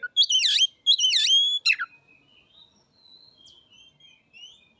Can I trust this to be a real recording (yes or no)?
yes